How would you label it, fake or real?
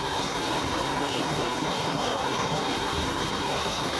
fake